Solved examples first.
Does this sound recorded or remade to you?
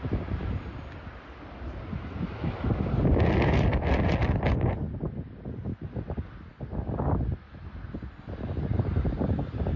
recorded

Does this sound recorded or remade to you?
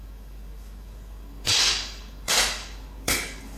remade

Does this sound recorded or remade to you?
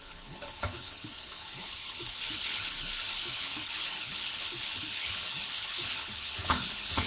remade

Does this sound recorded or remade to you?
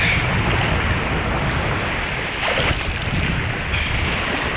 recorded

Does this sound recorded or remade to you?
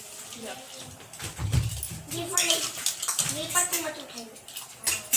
recorded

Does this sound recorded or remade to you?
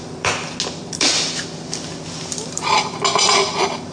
recorded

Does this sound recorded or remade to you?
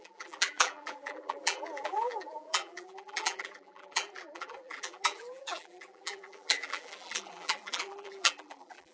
remade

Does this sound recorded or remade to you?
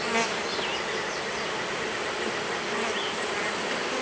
recorded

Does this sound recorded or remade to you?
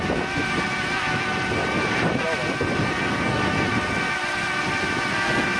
recorded